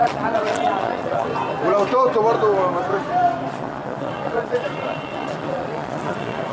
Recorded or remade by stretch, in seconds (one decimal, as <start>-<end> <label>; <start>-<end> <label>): 0.0-1.3 remade; 1.3-3.5 recorded; 3.5-6.5 remade